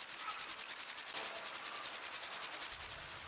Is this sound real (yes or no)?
yes